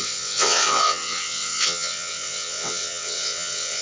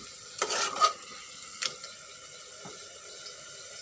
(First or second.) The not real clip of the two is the first